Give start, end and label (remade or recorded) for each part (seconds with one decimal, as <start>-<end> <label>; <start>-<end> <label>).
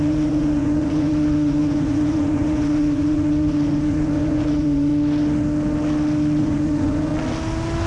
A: 0.0-4.9 remade; 4.9-6.4 recorded; 6.4-7.1 remade; 7.1-7.9 recorded